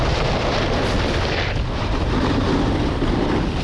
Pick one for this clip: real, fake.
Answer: fake